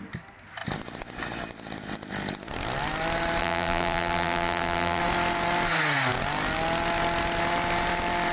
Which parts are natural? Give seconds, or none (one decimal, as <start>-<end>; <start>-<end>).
0.0-3.4; 5.0-8.3